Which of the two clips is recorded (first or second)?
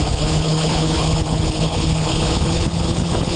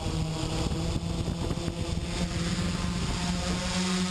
second